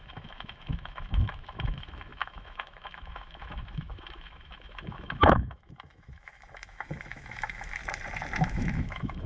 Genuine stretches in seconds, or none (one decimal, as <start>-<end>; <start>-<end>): 7.8-8.4